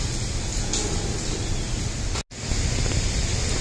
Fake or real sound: real